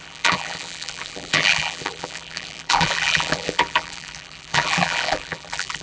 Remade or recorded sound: remade